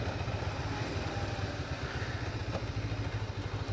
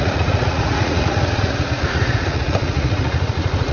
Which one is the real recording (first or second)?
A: first